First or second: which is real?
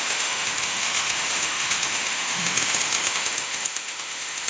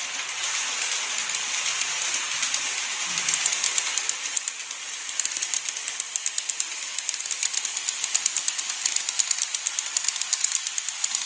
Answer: second